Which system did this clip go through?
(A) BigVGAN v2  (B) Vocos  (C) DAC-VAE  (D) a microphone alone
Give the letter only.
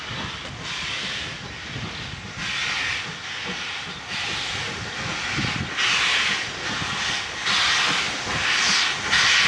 D